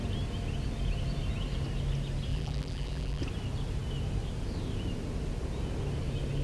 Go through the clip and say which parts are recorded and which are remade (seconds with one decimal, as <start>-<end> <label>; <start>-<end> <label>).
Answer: 0.0-2.3 recorded; 2.3-3.2 remade; 3.2-6.4 recorded